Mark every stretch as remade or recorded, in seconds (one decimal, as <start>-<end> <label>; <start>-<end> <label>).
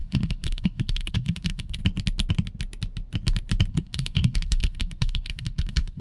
0.0-1.8 remade; 1.8-3.7 recorded; 3.7-6.0 remade